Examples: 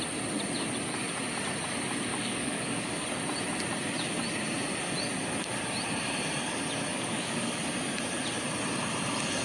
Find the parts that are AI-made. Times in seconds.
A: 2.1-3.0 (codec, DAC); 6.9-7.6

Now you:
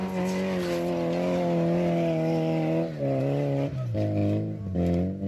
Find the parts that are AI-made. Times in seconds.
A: none

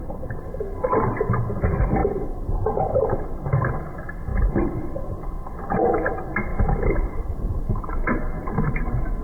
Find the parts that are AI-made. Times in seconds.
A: 2.0-3.8 (vocoder, BigVGAN v2); 6.5-7.7

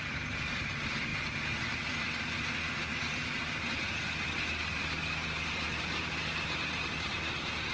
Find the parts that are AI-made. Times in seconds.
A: none

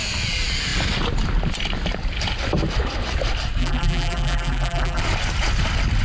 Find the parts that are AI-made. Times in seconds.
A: 3.6-5.0 (vocoder, BigVGAN v2)

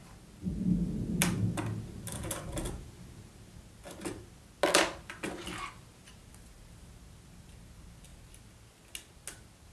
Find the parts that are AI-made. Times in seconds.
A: none